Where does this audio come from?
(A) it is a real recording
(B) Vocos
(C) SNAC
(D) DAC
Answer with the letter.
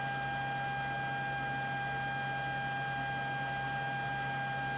A